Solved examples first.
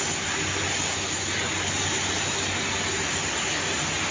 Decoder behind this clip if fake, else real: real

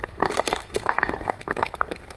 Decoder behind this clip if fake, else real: fake, codec, SNAC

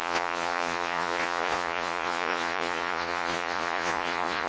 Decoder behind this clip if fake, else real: fake, vocoder, Vocos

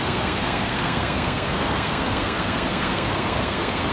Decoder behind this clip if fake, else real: fake, codec, SNAC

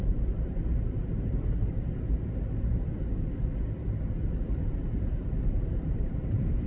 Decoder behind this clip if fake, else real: fake, vocoder, BigVGAN v2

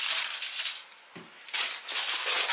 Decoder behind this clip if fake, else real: real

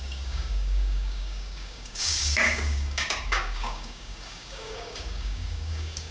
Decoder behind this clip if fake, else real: fake, codec, DAC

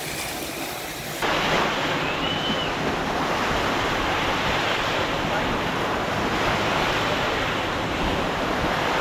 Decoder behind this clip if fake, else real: real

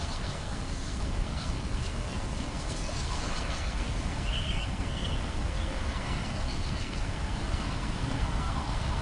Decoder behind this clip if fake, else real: fake, codec, SNAC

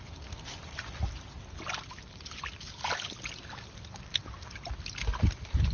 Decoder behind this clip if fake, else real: real